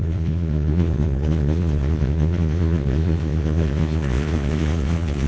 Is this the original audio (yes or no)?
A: no